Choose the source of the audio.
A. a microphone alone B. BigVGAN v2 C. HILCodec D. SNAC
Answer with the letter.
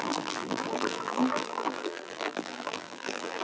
B